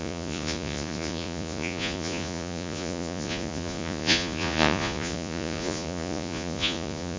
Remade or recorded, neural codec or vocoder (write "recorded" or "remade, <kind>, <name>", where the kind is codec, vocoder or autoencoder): remade, vocoder, Vocos